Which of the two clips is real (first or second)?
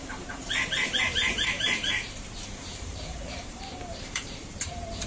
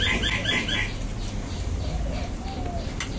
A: second